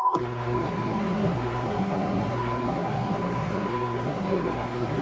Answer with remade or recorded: remade